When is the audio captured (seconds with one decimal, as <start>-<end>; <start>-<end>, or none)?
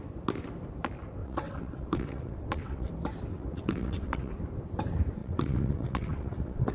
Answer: 0.0-1.2; 2.9-3.3; 4.3-5.2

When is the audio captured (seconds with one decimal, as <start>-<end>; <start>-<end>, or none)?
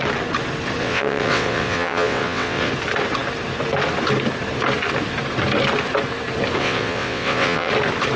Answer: 0.0-0.8; 2.7-6.6; 7.7-8.2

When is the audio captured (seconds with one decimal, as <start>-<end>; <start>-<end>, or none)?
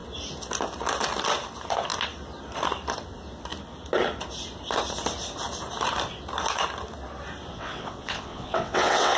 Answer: 0.0-7.5